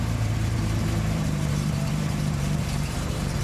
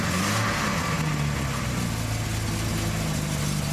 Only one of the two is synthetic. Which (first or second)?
first